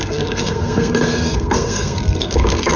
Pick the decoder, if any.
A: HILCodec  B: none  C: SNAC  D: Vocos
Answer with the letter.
C